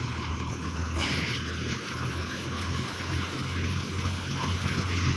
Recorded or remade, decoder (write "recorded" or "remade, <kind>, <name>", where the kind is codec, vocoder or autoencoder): remade, codec, HILCodec